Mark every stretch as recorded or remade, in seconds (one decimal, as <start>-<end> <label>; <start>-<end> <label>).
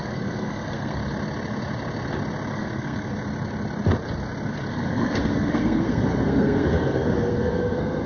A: 0.0-1.0 remade; 1.0-2.5 recorded; 2.5-3.1 remade; 3.1-4.7 recorded; 4.7-8.1 remade